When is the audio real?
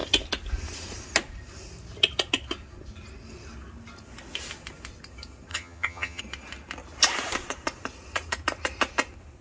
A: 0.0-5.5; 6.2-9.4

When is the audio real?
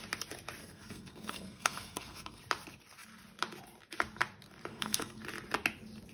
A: 0.0-0.6; 2.4-4.7; 5.2-6.1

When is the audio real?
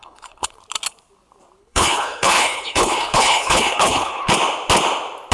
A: 0.6-1.6; 4.3-5.3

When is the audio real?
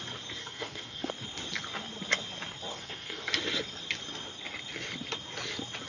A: 0.0-0.4; 1.1-2.7; 3.3-5.9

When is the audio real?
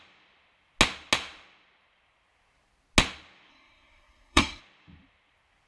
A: 0.0-3.5; 4.6-5.7